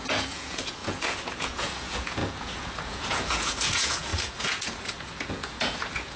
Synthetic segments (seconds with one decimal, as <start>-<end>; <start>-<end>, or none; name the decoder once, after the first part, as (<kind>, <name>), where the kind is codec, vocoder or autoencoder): 0.0-6.2 (vocoder, Vocos)